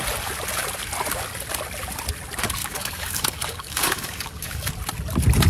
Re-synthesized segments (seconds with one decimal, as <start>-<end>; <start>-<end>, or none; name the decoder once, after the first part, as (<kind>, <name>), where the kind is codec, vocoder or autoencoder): 2.6-4.7 (codec, DAC)